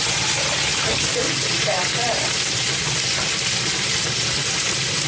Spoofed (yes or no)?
no